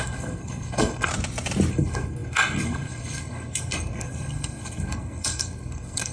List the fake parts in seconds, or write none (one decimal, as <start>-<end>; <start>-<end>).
0.0-1.1; 1.7-6.1